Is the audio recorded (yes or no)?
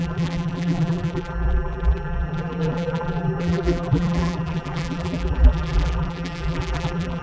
no